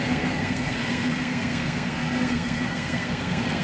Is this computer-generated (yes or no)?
yes